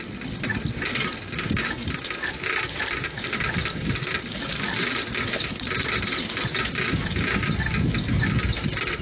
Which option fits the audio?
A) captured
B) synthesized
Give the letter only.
A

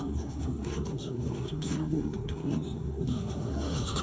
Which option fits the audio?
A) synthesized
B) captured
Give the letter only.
A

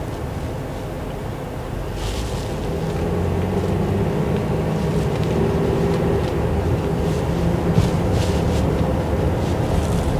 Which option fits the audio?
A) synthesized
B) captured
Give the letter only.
B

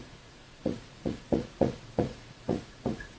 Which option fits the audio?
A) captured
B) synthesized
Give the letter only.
B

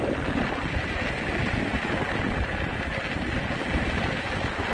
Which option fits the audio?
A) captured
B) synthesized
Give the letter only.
A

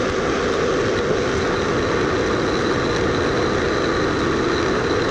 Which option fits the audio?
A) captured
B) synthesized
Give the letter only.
A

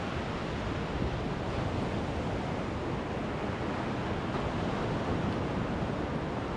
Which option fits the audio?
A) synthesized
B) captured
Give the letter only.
B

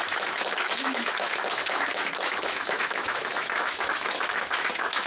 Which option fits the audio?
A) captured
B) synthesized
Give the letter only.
B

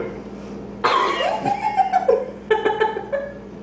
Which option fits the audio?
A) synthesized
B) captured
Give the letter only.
B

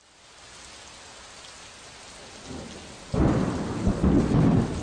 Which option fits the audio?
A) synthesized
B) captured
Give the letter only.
B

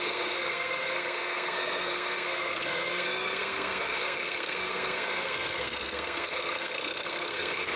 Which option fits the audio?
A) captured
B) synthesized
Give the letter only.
B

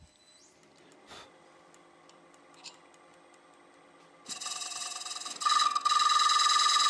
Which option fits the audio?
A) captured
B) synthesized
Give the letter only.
A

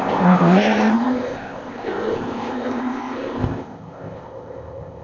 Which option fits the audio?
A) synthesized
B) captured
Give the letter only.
A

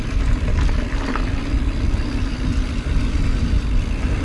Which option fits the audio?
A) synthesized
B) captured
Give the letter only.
B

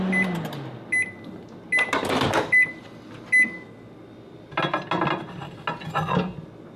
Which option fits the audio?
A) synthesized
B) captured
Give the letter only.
B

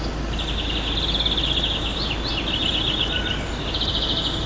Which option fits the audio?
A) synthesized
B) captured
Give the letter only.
B